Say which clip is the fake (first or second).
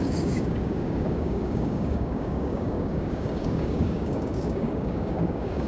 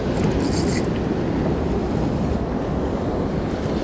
first